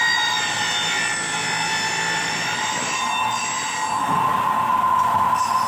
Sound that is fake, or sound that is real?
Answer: real